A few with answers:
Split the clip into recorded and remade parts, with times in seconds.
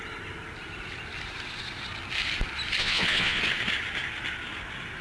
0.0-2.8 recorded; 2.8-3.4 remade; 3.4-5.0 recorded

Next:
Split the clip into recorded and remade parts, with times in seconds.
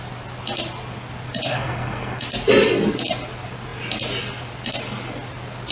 0.0-1.5 recorded; 1.5-2.2 remade; 2.2-5.7 recorded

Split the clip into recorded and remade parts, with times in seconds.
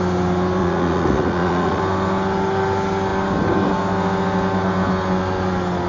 0.0-0.6 recorded; 0.6-1.8 remade; 1.8-5.9 recorded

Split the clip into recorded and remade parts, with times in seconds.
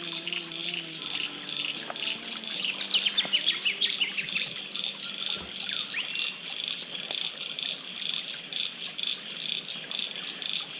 0.0-10.8 recorded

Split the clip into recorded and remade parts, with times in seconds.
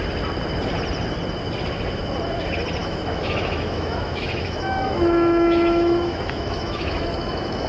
0.0-2.8 recorded; 2.8-7.7 remade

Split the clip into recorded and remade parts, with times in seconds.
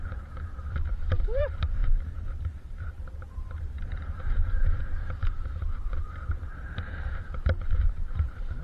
0.0-8.6 remade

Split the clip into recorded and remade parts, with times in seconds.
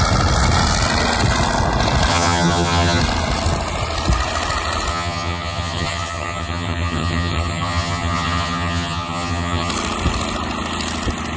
0.0-2.1 recorded; 2.1-3.0 remade; 3.0-4.9 recorded; 4.9-9.7 remade; 9.7-11.4 recorded